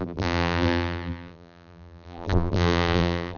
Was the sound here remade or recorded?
remade